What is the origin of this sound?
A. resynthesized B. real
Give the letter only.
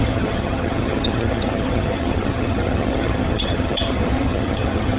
A